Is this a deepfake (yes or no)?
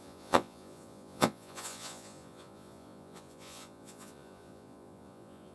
yes